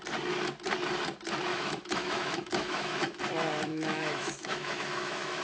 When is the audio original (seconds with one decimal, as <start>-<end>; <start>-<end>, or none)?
0.0-1.5; 3.2-3.7